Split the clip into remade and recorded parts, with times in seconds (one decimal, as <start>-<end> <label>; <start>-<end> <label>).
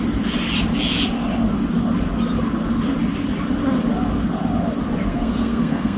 0.0-5.1 recorded; 5.1-6.0 remade